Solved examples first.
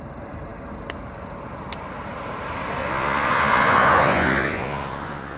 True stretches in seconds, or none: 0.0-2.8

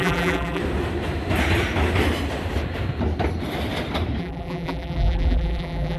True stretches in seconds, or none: 0.6-4.2